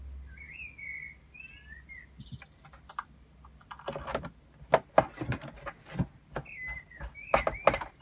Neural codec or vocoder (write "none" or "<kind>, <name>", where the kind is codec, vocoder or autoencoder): none